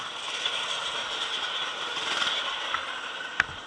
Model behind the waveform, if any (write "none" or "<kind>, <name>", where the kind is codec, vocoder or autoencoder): vocoder, BigVGAN v2